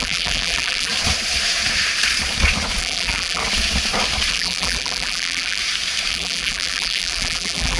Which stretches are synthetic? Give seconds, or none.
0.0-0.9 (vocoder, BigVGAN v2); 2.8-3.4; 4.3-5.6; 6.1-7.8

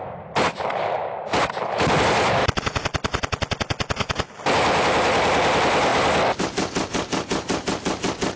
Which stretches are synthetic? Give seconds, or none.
none

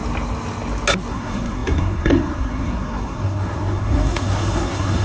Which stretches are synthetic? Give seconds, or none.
1.1-5.0 (codec, SNAC)

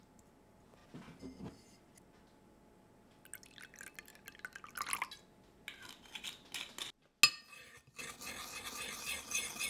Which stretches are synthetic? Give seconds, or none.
none

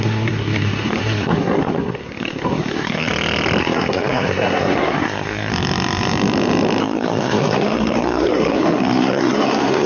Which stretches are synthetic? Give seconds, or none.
0.0-3.1 (codec, SNAC); 3.6-5.5; 6.8-9.9

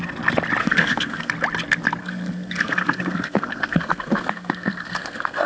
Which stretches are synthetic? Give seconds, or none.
0.6-1.3 (codec, SNAC); 2.0-5.5

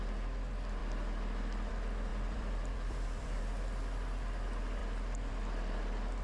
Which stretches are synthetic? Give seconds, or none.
2.1-3.4 (vocoder, BigVGAN v2)

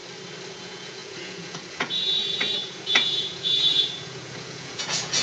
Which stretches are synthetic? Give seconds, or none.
0.5-5.2 (vocoder, Vocos)